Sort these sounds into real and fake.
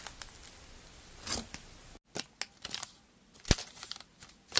real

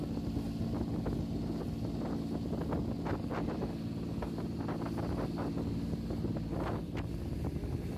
real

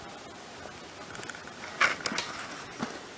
real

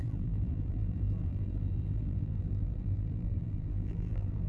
fake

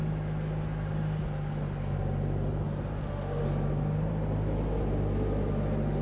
real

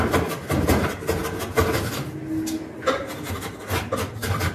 real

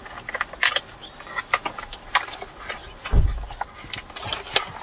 real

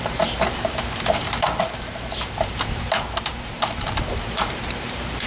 fake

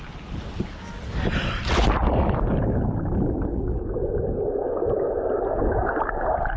real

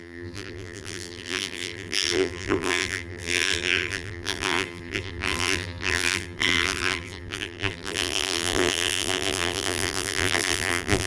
fake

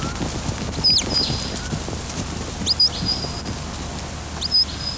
real